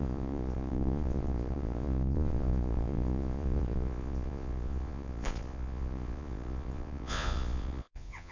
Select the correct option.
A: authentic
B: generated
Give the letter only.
B